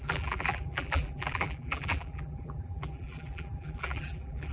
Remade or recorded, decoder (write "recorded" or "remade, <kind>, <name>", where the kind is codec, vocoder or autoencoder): remade, vocoder, BigVGAN v2